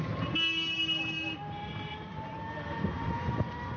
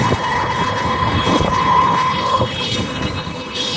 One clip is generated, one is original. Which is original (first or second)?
first